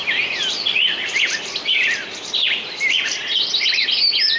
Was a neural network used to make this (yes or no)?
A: no